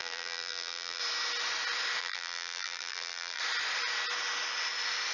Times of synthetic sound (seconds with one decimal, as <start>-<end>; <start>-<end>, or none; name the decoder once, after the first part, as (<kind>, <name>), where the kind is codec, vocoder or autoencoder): 0.0-1.0 (vocoder, BigVGAN v2); 2.0-3.4

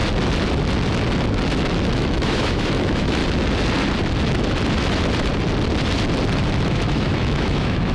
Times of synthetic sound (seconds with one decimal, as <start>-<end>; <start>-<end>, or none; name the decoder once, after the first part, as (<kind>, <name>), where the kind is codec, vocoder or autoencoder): 1.9-3.2 (autoencoder, DAC-VAE); 6.6-7.9

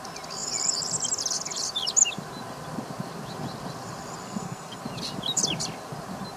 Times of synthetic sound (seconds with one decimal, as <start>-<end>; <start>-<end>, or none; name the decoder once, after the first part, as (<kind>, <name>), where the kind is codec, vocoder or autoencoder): 4.2-4.8 (codec, SNAC)

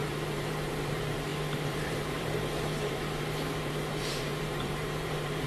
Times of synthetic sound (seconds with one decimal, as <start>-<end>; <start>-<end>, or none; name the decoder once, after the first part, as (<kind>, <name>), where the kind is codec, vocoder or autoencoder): 0.0-5.5 (vocoder, BigVGAN v2)

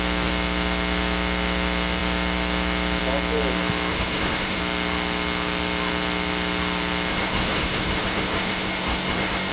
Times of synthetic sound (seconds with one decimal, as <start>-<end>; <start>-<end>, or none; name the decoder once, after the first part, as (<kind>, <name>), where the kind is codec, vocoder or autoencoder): 3.9-4.6 (codec, SNAC); 7.1-9.5

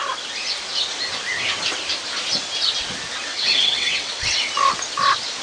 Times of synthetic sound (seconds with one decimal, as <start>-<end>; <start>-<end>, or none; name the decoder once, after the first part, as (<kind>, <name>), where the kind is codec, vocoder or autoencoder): 3.3-4.4 (vocoder, WaveNeXt)

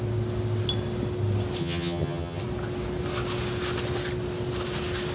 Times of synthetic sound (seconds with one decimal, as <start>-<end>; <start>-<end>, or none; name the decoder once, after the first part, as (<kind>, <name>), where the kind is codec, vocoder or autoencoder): 1.6-2.4 (vocoder, HiFi-GAN)

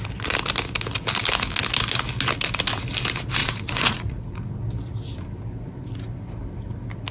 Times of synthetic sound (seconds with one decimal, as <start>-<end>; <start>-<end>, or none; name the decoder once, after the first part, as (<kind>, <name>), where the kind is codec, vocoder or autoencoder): 3.4-4.5 (vocoder, Vocos)